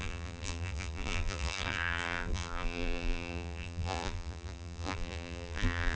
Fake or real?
fake